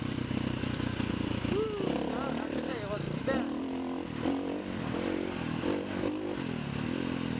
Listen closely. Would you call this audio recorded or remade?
recorded